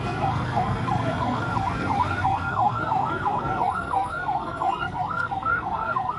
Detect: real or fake fake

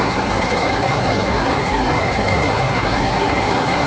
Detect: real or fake fake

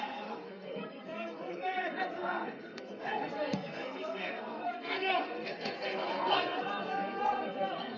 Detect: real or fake fake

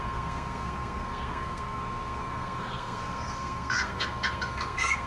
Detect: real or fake fake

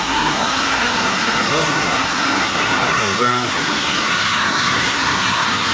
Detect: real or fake fake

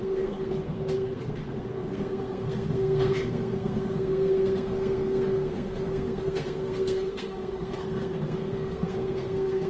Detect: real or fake fake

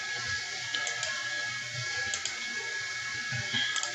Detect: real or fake real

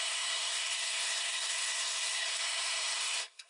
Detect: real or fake fake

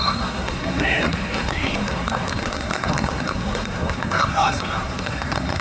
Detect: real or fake fake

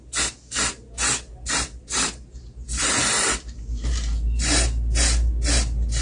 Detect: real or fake real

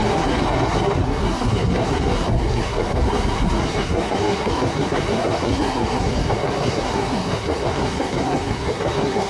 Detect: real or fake fake